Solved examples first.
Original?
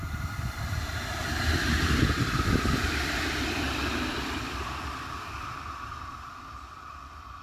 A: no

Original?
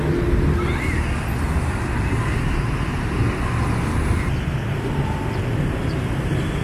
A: yes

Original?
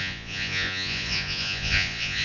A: no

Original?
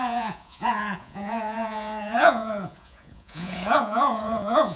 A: no